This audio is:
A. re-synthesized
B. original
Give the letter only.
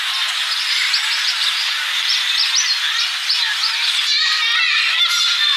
B